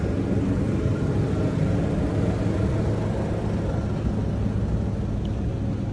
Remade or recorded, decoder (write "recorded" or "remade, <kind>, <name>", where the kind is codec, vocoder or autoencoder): recorded